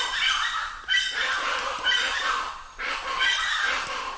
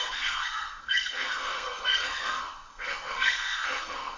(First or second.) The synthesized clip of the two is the second